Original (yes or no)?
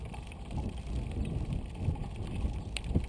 no